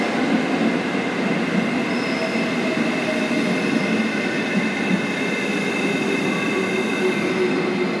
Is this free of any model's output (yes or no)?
yes